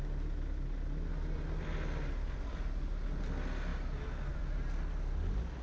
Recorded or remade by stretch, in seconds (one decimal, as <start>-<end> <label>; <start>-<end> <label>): 0.0-5.6 recorded